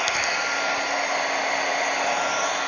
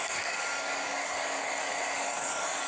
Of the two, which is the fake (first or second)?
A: second